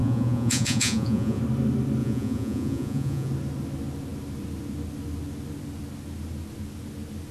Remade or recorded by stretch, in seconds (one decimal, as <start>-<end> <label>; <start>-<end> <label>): 0.0-1.4 remade; 1.4-2.0 recorded; 2.0-3.3 remade; 3.3-7.3 recorded